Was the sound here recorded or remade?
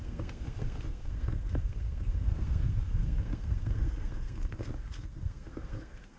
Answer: remade